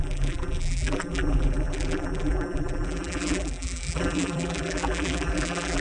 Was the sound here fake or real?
fake